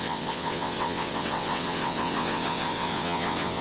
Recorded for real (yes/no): no